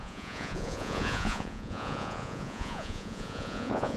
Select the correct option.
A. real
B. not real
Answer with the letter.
B